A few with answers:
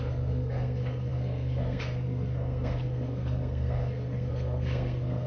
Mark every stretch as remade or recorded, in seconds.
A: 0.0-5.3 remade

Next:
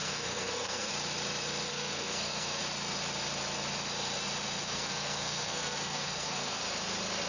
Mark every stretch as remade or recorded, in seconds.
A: 0.0-0.9 remade; 0.9-1.7 recorded; 1.7-2.6 remade; 2.6-4.6 recorded; 4.6-6.6 remade; 6.6-7.3 recorded

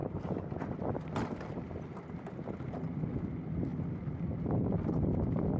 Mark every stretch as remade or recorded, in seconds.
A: 0.0-5.6 recorded

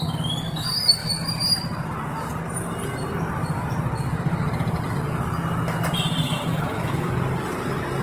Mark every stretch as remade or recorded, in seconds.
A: 0.0-6.2 recorded; 6.2-7.1 remade; 7.1-8.0 recorded